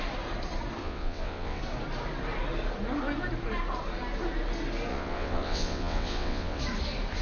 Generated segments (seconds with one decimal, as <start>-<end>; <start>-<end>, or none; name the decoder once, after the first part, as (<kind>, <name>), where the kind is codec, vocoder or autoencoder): 0.8-1.6 (vocoder, WaveNeXt); 4.9-6.6